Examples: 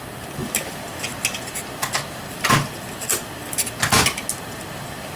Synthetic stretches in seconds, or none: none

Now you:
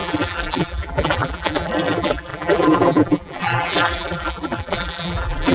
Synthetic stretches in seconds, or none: 0.0-5.5

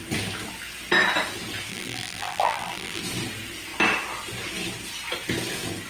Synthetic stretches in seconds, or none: 1.7-3.0

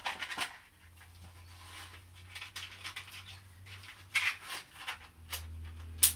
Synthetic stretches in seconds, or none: none

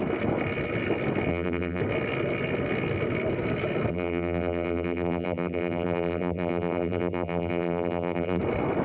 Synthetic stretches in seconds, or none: 1.3-1.8; 3.9-8.4

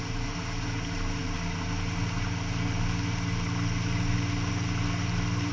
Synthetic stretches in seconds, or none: none